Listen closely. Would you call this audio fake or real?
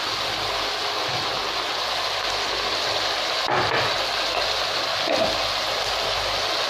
real